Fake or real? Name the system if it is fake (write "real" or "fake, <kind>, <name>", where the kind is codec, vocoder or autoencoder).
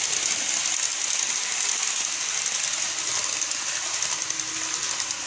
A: real